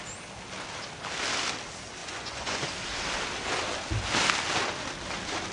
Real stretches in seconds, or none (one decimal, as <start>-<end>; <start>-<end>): 0.0-2.0; 2.7-5.5